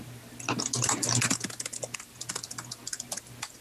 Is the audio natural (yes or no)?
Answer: yes